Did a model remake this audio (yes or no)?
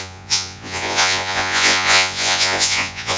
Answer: yes